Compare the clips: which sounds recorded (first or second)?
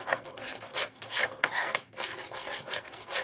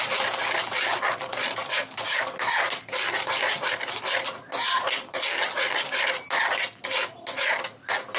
second